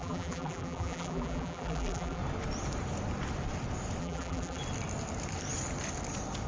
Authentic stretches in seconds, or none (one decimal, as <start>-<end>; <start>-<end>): 2.2-4.0; 4.6-6.5

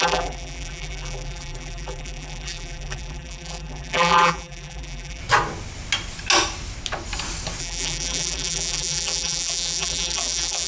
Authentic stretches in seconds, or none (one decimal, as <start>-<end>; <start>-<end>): 5.2-7.6

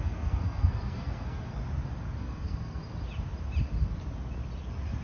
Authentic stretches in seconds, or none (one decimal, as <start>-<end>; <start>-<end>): 1.6-2.2; 2.8-5.0

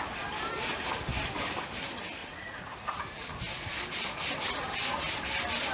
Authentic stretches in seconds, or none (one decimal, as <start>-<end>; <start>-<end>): 0.0-2.2; 3.3-5.7